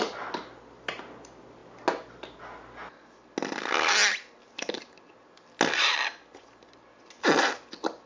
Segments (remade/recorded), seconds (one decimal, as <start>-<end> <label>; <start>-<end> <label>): 0.0-8.1 recorded